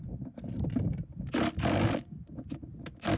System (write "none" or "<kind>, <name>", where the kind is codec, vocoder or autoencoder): none